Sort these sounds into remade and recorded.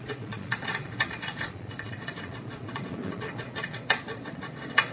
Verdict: remade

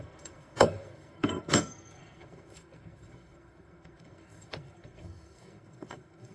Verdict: remade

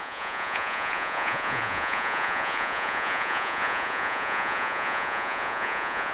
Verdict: remade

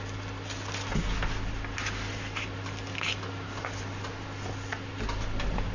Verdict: recorded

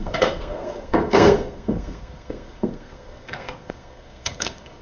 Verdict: remade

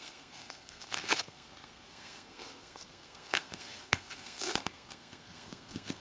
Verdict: remade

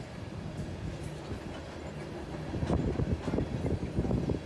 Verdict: recorded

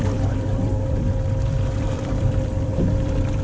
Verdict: remade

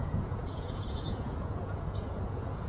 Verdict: remade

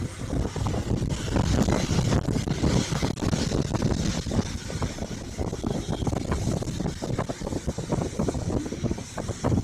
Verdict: recorded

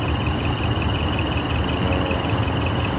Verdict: recorded